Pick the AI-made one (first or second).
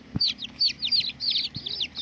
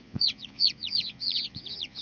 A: second